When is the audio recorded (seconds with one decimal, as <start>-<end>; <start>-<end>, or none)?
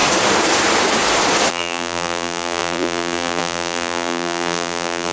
0.0-1.5